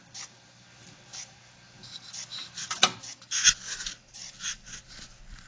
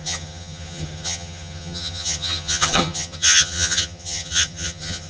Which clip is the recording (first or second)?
first